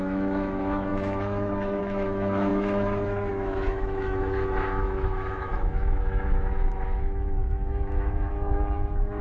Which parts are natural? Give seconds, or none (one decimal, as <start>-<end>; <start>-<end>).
none